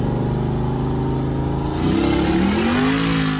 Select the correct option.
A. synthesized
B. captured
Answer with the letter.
B